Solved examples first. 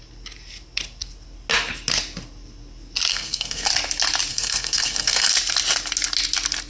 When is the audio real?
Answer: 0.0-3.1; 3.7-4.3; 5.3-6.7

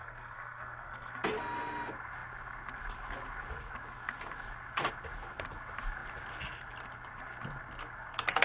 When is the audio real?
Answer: 1.1-8.4

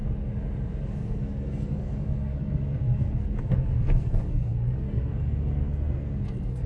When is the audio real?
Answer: 0.0-0.9

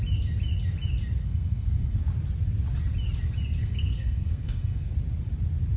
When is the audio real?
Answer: 0.0-1.2; 2.0-3.6; 4.9-5.8

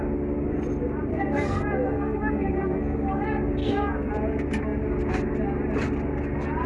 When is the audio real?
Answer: 0.0-1.1; 3.2-3.6; 4.1-6.7

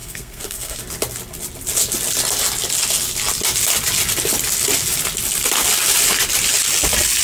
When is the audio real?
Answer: 0.8-7.2

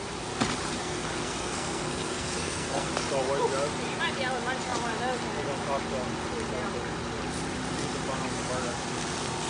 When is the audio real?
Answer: 0.0-0.8; 2.9-9.5